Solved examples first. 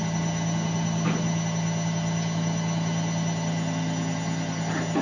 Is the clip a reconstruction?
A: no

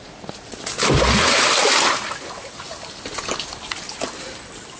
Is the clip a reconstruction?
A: no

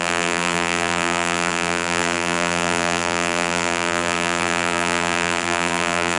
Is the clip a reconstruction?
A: yes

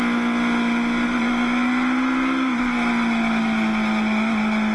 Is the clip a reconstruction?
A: no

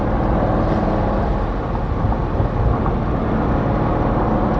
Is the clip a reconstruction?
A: no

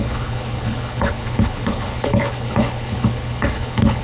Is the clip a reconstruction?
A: yes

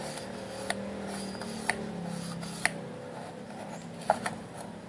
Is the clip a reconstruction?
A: no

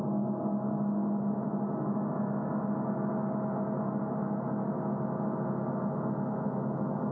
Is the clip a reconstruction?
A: no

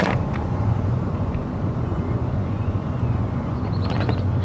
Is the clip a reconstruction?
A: yes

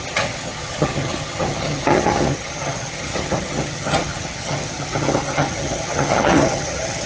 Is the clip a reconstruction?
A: yes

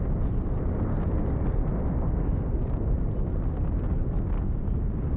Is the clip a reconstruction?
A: no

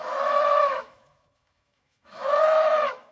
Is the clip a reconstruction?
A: yes